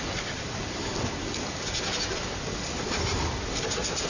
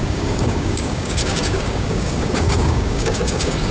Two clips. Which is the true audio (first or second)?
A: first